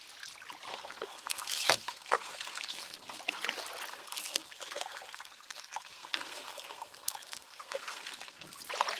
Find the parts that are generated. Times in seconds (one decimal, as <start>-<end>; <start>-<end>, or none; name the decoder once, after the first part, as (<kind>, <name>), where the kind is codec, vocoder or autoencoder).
0.7-3.2 (codec, SNAC); 3.9-8.6